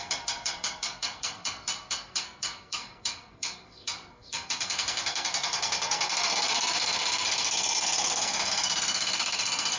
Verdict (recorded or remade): remade